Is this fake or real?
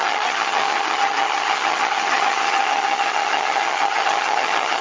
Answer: fake